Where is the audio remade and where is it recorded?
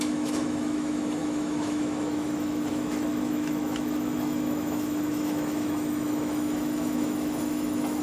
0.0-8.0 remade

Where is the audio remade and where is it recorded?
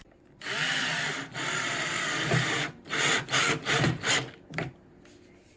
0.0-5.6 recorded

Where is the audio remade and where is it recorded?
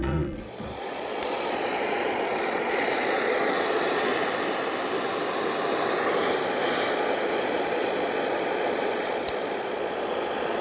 0.0-4.1 remade; 4.1-6.9 recorded; 6.9-10.6 remade